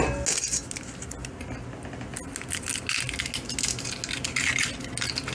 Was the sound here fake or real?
real